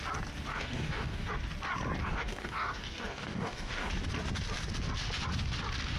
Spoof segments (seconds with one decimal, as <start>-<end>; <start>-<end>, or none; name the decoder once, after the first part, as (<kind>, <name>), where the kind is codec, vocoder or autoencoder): 0.5-1.3 (codec, DAC); 2.0-3.9